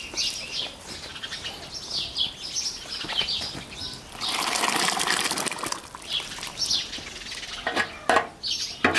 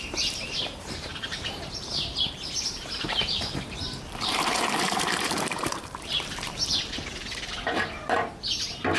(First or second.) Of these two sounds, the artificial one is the second